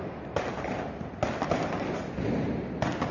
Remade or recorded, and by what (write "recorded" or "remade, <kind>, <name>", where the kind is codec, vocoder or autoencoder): recorded